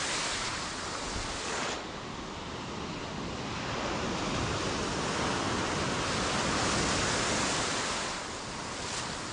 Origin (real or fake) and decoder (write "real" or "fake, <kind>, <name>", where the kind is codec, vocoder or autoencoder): real